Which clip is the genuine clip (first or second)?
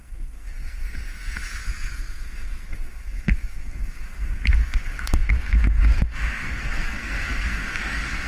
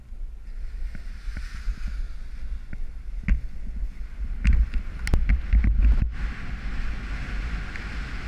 second